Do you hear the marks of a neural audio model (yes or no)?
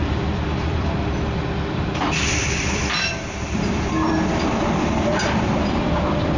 yes